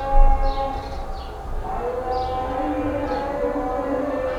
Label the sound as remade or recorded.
recorded